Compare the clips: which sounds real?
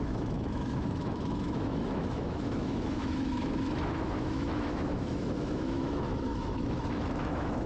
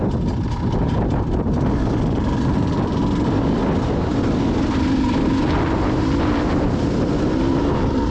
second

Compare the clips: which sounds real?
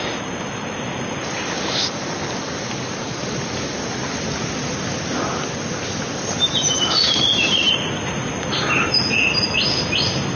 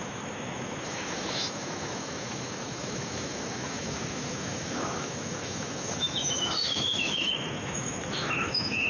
first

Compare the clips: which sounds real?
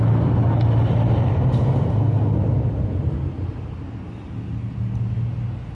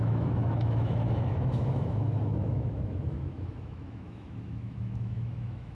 first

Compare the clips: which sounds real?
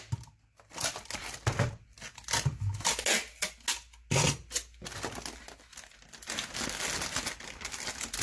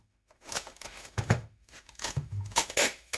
first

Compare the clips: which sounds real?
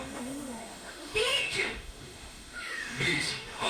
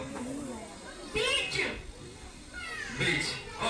second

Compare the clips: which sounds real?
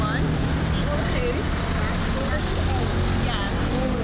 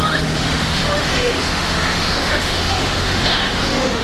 first